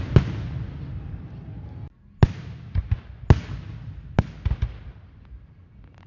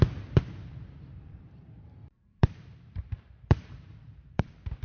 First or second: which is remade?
second